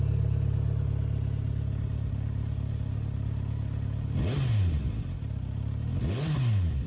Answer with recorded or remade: recorded